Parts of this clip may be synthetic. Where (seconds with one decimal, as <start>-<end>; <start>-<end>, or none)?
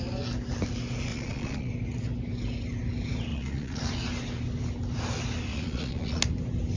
1.1-1.7; 3.3-3.9; 5.5-6.2